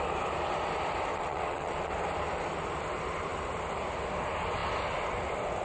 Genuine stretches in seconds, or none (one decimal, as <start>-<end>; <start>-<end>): 0.0-1.1; 1.9-5.6